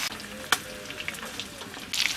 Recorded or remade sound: recorded